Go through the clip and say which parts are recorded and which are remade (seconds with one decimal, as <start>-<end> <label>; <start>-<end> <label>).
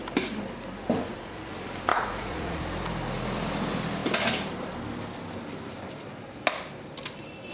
0.0-1.0 recorded; 1.0-1.5 remade; 1.5-1.9 recorded; 1.9-2.6 remade; 2.6-7.5 recorded